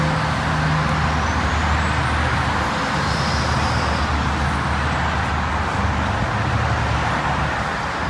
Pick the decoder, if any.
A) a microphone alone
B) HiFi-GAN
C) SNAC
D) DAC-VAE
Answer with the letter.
A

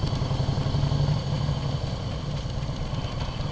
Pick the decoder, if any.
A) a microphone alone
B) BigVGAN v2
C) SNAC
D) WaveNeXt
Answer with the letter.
A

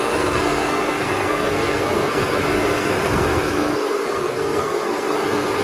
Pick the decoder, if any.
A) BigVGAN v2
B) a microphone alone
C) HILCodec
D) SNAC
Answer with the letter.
D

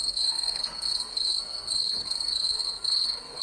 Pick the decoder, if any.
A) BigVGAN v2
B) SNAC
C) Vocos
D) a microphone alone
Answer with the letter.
B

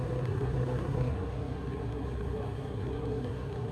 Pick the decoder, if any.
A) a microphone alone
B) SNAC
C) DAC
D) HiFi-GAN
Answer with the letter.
B